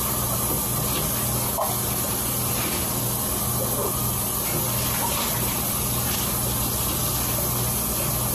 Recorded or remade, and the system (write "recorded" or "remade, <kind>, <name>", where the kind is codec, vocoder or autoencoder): recorded